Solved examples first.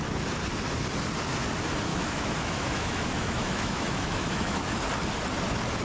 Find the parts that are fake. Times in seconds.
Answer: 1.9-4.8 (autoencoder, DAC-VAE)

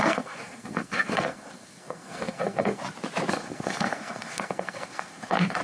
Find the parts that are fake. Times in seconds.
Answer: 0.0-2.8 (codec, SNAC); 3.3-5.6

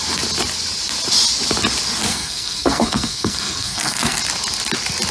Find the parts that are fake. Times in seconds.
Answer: 2.1-4.2 (codec, SNAC)